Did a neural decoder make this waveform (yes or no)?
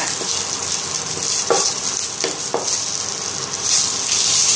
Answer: no